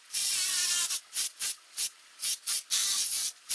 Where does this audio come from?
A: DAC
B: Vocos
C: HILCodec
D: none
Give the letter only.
D